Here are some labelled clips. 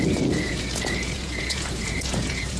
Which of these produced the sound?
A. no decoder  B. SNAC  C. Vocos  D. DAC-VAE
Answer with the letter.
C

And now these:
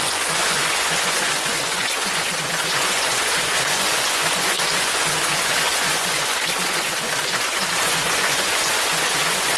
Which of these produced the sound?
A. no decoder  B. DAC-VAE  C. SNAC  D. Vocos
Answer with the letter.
D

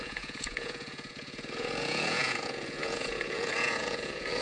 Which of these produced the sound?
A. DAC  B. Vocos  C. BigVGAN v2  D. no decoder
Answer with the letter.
B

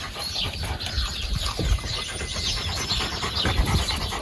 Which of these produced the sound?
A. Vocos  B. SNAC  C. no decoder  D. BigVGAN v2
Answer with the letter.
C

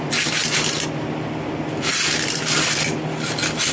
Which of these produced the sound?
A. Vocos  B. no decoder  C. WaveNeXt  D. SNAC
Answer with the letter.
B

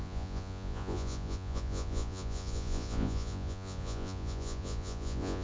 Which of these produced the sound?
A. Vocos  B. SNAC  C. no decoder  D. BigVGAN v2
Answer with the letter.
A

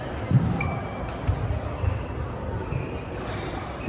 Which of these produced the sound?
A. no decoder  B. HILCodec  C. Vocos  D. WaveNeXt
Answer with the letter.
A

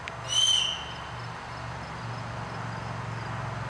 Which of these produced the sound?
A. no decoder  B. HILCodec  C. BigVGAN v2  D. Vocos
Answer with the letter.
A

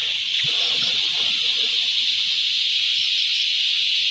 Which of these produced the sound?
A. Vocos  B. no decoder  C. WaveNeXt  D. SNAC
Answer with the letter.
A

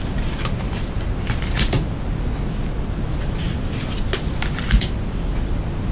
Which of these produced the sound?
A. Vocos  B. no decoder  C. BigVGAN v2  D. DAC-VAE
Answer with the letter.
B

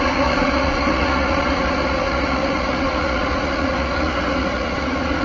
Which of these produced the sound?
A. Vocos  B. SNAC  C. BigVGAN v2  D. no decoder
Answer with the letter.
A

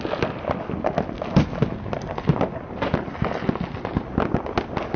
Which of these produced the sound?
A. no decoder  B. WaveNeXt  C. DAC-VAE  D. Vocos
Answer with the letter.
A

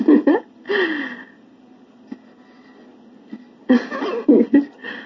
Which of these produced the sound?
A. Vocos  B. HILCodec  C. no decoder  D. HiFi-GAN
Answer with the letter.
C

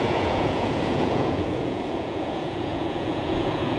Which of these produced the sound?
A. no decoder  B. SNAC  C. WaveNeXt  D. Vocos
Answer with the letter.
D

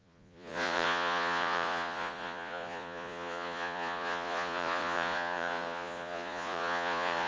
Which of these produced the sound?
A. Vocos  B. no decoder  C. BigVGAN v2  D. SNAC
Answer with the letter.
A